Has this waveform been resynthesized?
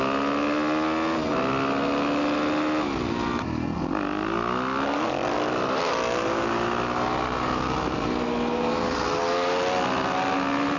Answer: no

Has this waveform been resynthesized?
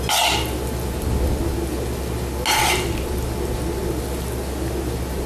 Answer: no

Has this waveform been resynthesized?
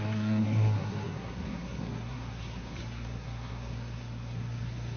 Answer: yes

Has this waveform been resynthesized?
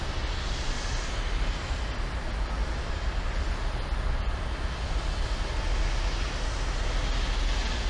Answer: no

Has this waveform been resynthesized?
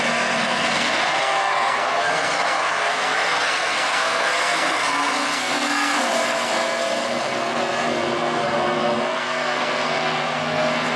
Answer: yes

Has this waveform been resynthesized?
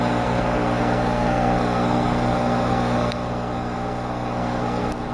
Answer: yes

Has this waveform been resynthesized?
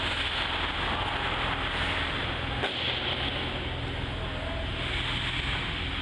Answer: no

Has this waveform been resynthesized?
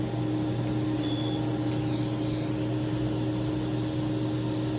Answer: no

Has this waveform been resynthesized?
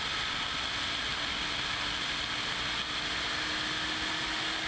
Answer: no